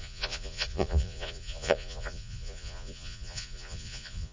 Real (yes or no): no